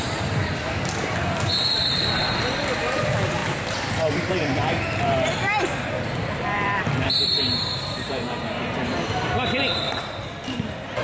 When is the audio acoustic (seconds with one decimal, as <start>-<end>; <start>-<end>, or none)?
none